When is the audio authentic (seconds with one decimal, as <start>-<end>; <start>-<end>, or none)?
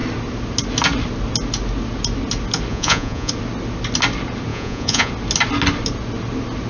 0.0-2.7; 3.3-4.5; 5.1-6.7